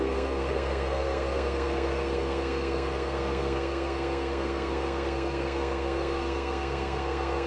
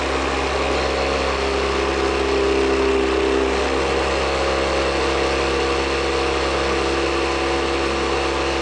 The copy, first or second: first